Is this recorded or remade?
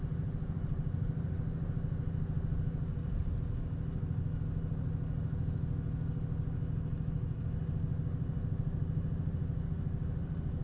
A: recorded